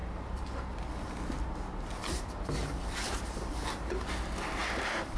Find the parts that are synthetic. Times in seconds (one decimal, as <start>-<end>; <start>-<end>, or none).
0.0-0.9; 2.6-3.9